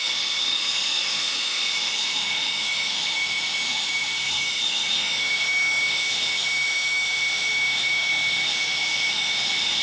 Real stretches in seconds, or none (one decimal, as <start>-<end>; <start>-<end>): none